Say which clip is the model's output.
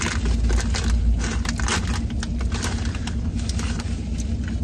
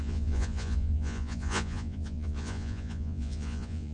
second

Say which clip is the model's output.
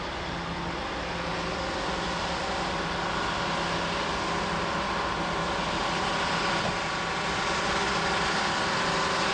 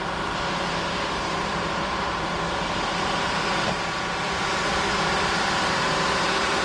second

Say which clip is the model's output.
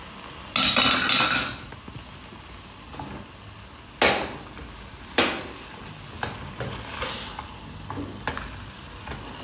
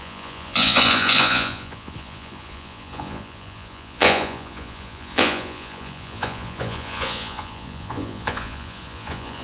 second